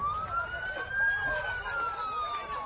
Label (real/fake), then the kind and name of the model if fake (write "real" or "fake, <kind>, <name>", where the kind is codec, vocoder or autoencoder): real